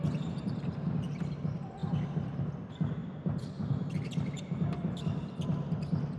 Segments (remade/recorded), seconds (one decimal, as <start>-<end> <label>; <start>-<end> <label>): 0.0-1.8 remade; 1.8-2.4 recorded; 2.4-6.2 remade